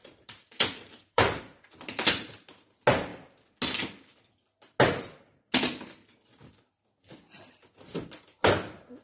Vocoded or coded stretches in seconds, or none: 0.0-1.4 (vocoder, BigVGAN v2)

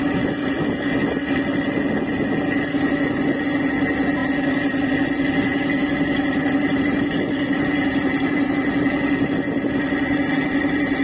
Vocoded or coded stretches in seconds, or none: none

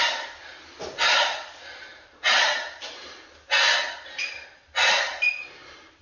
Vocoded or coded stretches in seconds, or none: none

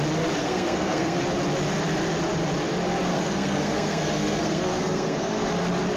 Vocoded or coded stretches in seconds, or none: 0.4-1.2 (codec, SNAC); 3.1-5.5

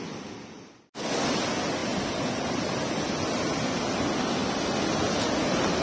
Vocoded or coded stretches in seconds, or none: none

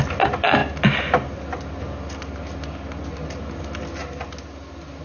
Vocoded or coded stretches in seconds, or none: none

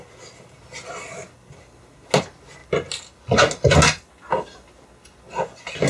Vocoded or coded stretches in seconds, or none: none